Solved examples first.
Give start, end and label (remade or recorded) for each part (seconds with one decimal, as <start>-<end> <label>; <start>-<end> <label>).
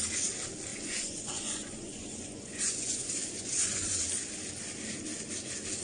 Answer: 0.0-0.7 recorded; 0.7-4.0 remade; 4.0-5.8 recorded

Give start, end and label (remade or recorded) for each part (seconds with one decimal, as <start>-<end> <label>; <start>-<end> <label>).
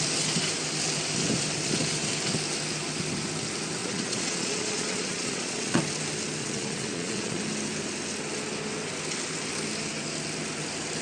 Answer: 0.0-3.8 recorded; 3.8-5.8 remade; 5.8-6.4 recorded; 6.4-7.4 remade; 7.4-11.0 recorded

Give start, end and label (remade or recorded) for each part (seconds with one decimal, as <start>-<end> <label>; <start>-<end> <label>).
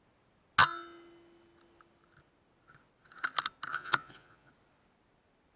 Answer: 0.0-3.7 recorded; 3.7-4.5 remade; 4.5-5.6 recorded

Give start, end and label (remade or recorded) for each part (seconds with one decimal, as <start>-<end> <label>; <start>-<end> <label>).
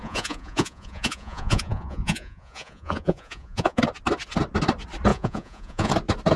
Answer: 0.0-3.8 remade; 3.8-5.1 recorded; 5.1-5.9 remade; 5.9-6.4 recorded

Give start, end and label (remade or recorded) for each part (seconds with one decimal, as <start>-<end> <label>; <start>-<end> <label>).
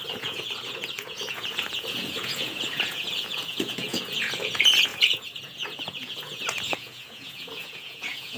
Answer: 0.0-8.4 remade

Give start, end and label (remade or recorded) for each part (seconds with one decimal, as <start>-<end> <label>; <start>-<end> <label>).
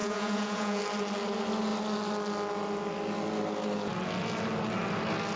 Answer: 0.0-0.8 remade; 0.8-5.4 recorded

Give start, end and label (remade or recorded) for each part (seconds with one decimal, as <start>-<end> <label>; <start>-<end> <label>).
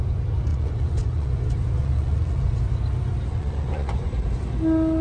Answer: 0.0-0.5 recorded; 0.5-1.3 remade; 1.3-1.8 recorded; 1.8-2.5 remade; 2.5-3.3 recorded; 3.3-4.1 remade; 4.1-5.0 recorded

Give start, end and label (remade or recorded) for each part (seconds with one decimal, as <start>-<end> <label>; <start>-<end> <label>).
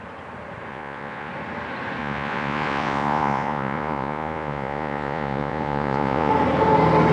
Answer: 0.0-0.7 recorded; 0.7-1.3 remade; 1.3-2.0 recorded; 2.0-6.3 remade; 6.3-7.1 recorded